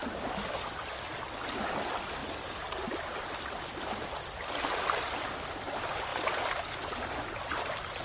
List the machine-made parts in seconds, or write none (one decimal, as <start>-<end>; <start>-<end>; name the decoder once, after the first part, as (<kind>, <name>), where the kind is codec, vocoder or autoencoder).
none